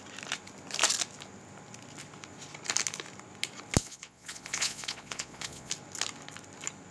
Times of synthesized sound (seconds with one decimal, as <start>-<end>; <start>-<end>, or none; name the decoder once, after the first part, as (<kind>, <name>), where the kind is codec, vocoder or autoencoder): 3.8-5.7 (vocoder, Vocos)